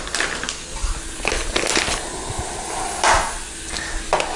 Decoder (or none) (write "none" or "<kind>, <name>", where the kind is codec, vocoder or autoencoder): none